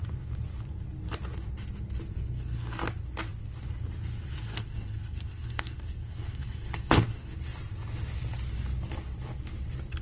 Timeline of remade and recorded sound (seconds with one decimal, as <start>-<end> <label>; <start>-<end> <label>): 0.0-2.1 recorded; 2.1-2.8 remade; 2.8-4.5 recorded; 4.5-7.4 remade; 7.4-10.0 recorded